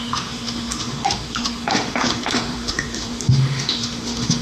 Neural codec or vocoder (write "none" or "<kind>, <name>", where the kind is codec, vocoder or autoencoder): autoencoder, DAC-VAE